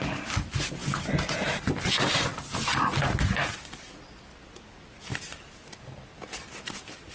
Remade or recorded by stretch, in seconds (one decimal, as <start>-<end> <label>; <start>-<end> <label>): 0.0-7.1 recorded